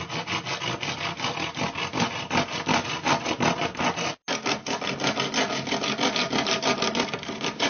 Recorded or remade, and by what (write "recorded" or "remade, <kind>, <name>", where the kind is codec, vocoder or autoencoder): recorded